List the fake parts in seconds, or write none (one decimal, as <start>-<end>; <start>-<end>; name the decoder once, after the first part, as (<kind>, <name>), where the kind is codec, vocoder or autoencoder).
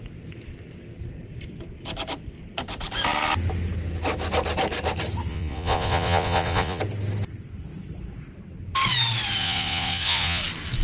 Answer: 5.3-6.8 (vocoder, Vocos); 9.4-10.4